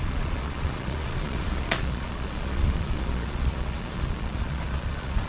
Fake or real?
fake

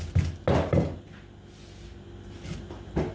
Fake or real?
real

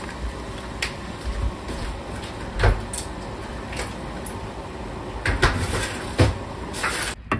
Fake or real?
real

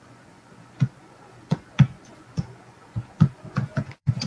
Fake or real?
fake